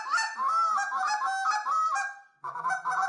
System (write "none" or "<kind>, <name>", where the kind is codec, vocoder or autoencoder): none